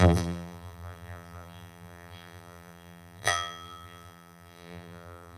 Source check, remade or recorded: remade